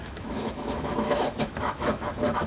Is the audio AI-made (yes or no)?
yes